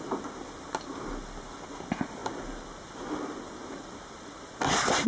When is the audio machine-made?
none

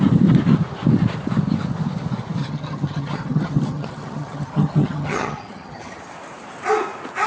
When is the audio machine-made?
2.4-6.0 (vocoder, HiFi-GAN)

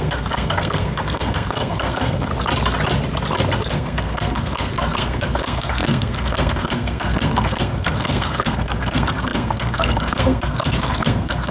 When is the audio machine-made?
0.0-2.3 (codec, SNAC); 3.7-11.5

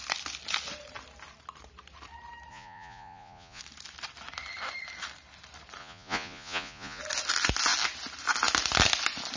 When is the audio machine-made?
2.5-3.6 (vocoder, Vocos); 5.8-7.0